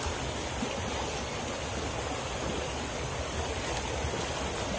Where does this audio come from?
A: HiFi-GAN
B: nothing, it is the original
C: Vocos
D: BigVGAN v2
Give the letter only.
B